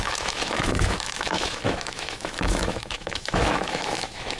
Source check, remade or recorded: remade